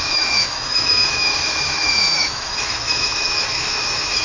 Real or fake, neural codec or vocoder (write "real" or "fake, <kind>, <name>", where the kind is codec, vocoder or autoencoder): fake, autoencoder, DAC-VAE